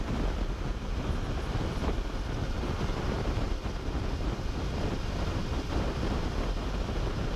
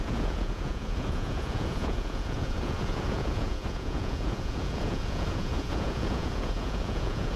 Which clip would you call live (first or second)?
first